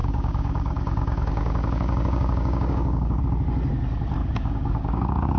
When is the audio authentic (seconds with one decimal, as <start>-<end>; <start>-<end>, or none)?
3.2-4.2